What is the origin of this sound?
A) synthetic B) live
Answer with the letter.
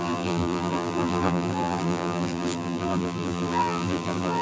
A